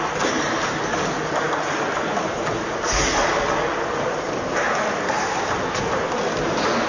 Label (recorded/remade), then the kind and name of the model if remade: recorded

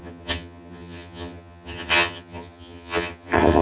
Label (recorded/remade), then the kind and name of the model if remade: remade, vocoder, HiFi-GAN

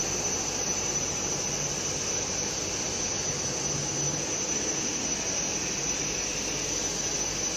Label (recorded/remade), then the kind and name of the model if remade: recorded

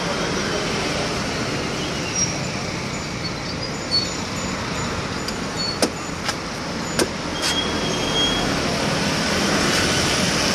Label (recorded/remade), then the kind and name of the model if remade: recorded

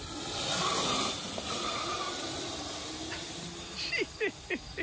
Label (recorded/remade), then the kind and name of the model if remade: recorded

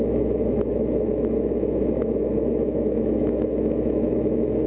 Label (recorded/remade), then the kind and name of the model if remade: remade, autoencoder, DAC-VAE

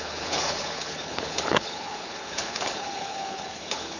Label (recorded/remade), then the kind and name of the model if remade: remade, codec, HILCodec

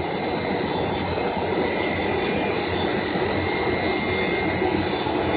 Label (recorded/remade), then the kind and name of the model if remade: recorded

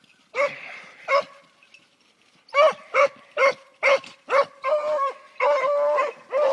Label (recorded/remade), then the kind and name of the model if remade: recorded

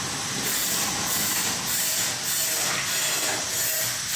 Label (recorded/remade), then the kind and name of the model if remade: recorded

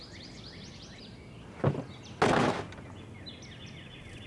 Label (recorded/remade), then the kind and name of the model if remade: recorded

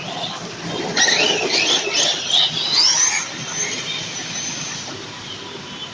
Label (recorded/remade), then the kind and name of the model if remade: recorded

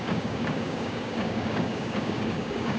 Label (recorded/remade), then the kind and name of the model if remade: remade, codec, DAC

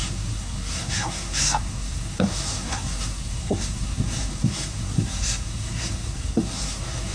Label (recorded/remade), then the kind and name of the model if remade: remade, codec, SNAC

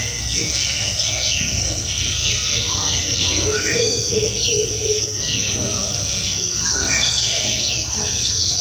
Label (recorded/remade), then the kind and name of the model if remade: remade, codec, SNAC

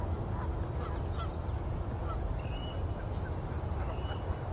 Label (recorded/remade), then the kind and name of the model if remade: recorded